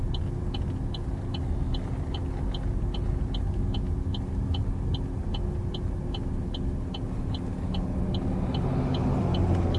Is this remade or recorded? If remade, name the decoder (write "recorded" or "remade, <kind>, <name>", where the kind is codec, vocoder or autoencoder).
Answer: recorded